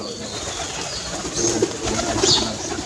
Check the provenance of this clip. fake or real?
real